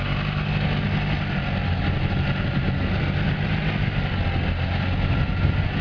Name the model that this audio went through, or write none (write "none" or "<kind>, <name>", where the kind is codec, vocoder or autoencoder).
none